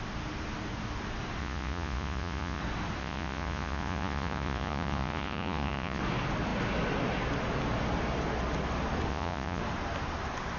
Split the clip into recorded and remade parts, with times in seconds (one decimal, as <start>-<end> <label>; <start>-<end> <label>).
0.0-1.4 recorded; 1.4-2.6 remade; 2.6-3.0 recorded; 3.0-6.0 remade; 6.0-9.1 recorded; 9.1-9.6 remade; 9.6-10.6 recorded